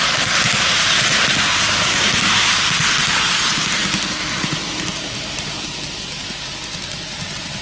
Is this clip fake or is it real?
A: real